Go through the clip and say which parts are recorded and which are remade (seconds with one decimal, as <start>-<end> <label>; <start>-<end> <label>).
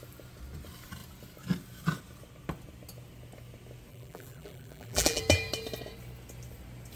0.0-3.9 recorded; 3.9-5.2 remade; 5.2-7.0 recorded